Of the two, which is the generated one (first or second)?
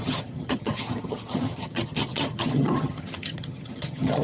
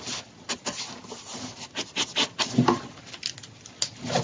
first